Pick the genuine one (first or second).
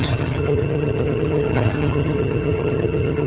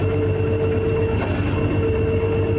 second